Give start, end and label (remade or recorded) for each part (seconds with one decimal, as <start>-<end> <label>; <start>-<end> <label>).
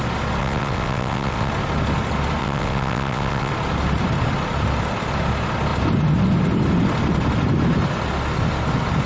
0.0-0.4 recorded; 0.4-1.5 remade; 1.5-2.4 recorded; 2.4-3.5 remade; 3.5-9.1 recorded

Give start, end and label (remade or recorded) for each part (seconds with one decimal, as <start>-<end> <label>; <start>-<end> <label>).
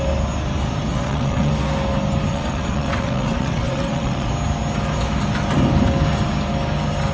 0.0-0.9 recorded; 0.9-1.5 remade; 1.5-2.3 recorded; 2.3-4.3 remade; 4.3-7.1 recorded